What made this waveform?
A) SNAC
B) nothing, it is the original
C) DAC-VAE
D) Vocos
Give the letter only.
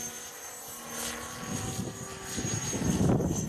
B